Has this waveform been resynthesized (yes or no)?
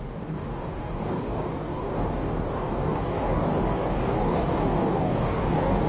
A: yes